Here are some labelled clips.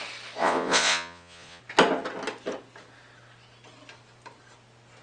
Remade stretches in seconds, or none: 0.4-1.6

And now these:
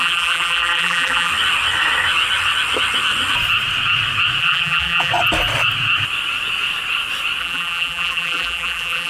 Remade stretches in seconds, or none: 0.0-1.3; 4.4-5.1; 7.4-9.1

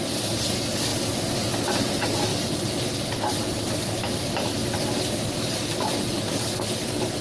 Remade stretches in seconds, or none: none

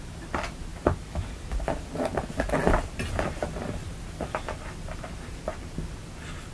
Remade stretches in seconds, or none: none

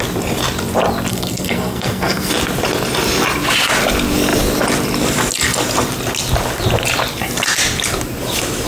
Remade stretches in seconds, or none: 1.1-2.3

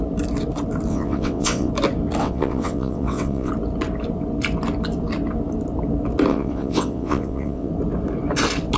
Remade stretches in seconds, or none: 0.9-1.7; 2.2-3.5; 6.3-7.7

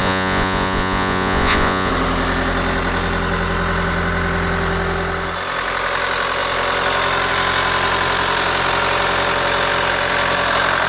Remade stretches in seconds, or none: 0.0-1.9

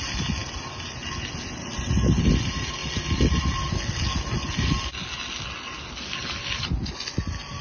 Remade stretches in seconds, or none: none